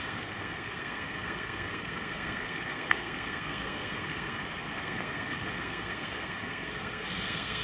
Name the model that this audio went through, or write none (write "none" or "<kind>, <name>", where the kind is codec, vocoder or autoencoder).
codec, SNAC